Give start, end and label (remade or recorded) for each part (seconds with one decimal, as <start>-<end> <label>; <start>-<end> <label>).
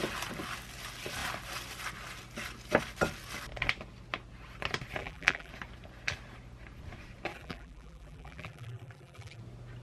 0.0-5.0 recorded; 5.0-5.5 remade; 5.5-7.3 recorded; 7.3-9.4 remade; 9.4-9.8 recorded